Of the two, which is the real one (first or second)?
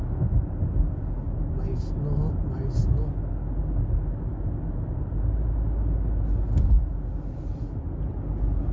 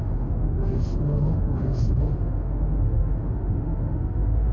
first